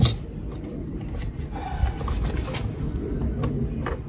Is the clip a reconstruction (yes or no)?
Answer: no